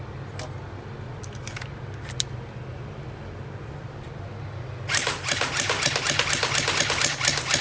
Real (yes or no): yes